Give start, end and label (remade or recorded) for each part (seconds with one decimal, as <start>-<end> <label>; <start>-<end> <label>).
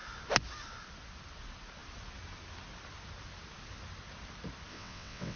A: 0.0-4.7 recorded; 4.7-5.4 remade